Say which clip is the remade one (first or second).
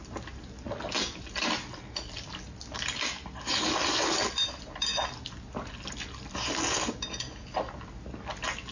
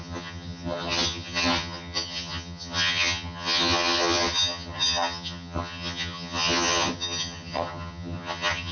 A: second